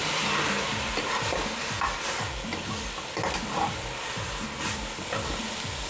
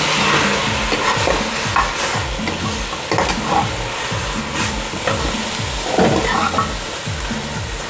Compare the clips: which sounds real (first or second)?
second